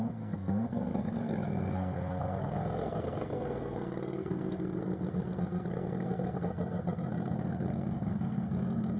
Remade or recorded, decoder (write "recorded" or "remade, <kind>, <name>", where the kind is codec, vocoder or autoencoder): remade, codec, SNAC